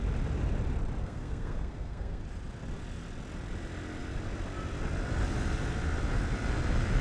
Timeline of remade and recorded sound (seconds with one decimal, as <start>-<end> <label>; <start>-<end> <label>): 0.0-1.0 recorded; 1.0-2.2 remade; 2.2-7.0 recorded